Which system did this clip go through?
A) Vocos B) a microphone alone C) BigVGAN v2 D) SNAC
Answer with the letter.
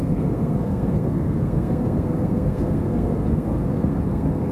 D